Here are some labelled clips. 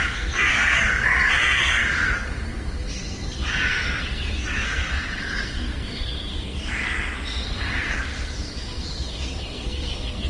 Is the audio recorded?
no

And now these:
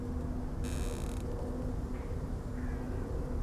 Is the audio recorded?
yes